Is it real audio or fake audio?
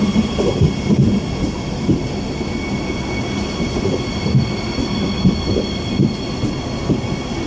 real